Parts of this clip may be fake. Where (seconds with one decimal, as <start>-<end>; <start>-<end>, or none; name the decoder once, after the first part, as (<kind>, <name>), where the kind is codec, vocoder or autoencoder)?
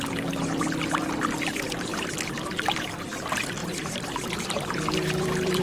3.6-5.6 (vocoder, BigVGAN v2)